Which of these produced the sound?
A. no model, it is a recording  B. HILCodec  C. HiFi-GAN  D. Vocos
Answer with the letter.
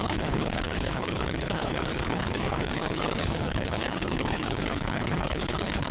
B